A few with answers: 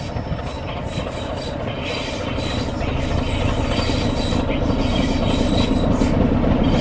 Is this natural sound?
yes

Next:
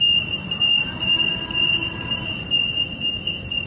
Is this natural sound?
yes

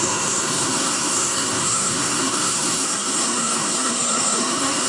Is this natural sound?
no